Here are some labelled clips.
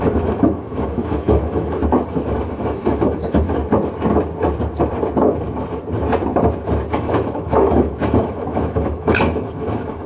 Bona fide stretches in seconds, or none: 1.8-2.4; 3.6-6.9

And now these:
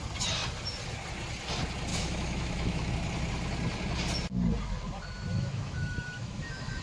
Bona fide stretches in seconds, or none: 0.0-1.9; 2.9-5.3

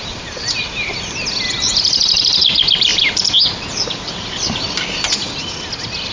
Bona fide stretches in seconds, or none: 0.0-6.1

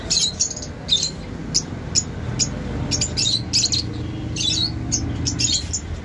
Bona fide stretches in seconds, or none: 0.0-6.0

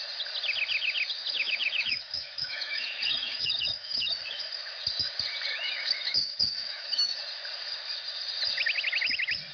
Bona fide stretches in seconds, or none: 0.0-1.2; 4.5-5.5; 7.2-9.5

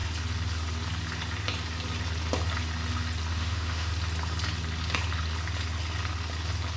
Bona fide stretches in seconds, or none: 0.0-3.3; 3.9-6.8

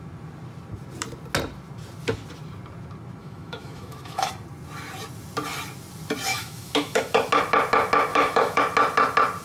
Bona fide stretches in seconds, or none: 0.0-3.2; 4.3-6.3; 7.3-8.1; 8.6-9.4